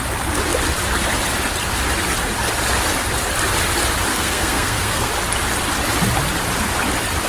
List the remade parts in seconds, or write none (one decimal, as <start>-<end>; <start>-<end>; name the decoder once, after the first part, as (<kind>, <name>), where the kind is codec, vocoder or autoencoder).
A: 4.1-5.1 (codec, SNAC)